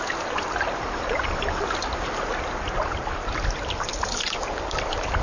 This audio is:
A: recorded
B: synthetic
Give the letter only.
A